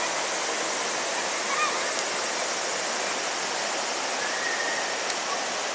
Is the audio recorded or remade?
recorded